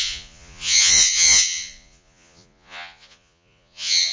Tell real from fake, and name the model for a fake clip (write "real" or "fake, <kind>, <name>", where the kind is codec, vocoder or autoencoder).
fake, vocoder, Vocos